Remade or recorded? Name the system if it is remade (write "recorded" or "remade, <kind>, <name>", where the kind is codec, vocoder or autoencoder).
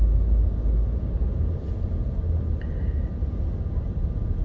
recorded